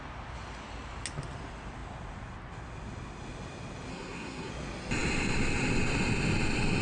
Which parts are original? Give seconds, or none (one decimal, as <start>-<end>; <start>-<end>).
0.0-3.9; 4.5-6.8